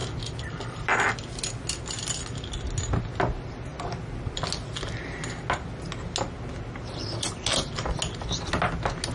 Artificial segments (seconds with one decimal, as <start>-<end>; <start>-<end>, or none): 0.0-1.5; 3.7-4.4